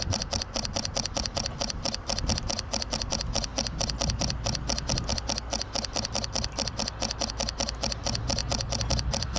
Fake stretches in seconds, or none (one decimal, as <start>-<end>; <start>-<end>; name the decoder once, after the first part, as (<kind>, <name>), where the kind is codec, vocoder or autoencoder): none